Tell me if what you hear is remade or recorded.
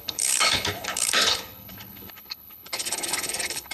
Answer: remade